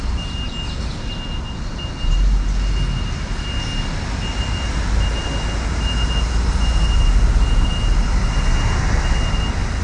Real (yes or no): yes